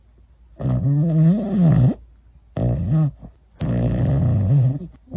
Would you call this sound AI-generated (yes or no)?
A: no